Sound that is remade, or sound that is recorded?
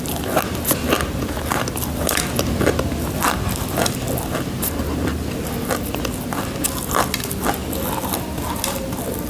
recorded